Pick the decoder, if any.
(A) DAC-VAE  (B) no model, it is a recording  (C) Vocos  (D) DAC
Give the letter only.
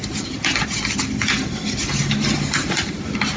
B